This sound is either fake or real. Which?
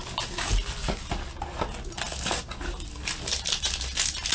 real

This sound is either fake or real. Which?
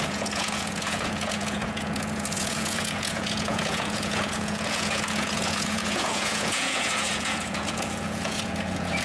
fake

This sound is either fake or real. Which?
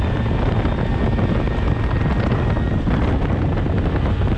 real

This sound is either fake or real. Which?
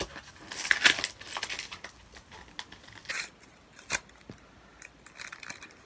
real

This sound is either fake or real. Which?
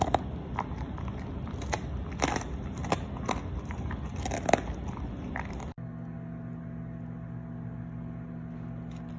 real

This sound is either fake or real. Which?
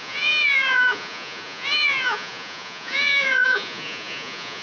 fake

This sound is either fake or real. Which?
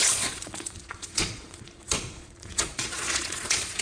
fake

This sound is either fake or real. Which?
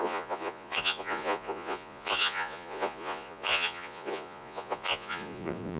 fake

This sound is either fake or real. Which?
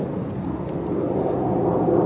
real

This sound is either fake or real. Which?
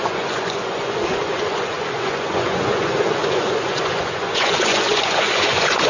fake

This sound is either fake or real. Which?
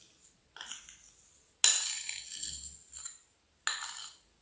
real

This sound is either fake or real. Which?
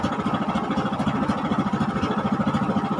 real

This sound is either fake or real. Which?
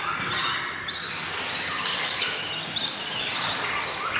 real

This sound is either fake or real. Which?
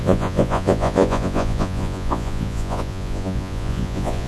fake